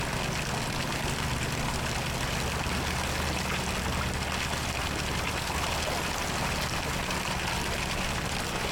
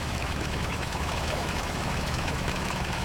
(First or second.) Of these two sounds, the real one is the first